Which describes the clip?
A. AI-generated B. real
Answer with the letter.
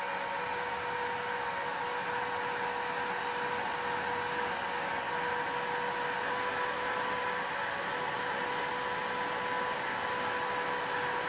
B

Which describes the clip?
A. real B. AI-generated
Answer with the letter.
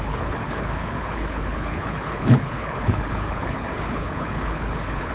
B